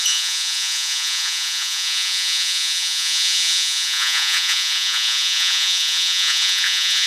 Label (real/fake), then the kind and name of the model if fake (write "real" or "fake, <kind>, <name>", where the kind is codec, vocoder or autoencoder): fake, vocoder, Vocos